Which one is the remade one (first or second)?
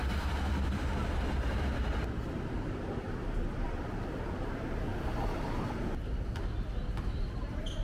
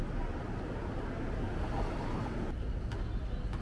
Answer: first